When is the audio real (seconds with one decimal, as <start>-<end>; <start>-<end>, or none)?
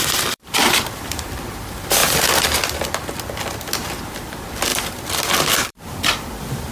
2.0-4.0